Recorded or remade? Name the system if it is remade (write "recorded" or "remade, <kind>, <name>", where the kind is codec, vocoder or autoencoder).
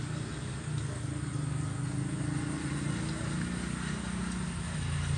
recorded